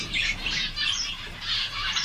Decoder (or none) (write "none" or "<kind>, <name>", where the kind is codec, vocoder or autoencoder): vocoder, BigVGAN v2